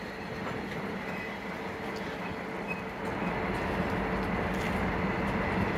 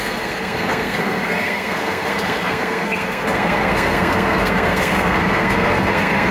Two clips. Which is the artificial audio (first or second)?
second